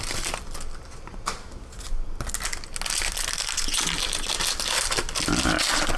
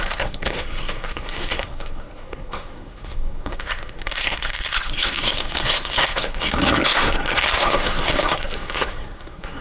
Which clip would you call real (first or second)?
first